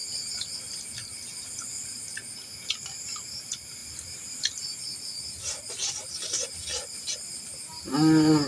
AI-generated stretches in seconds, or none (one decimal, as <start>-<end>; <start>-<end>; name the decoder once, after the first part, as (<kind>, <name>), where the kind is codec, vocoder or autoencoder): none